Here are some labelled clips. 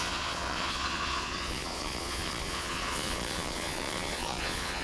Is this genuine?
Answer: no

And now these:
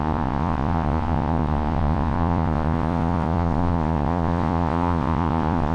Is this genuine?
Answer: no